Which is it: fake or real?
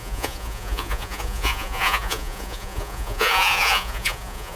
fake